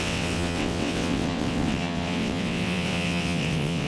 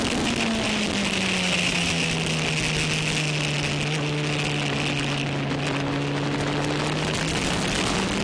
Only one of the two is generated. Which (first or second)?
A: first